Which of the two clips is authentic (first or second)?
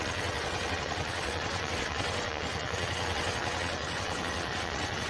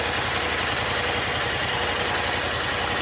second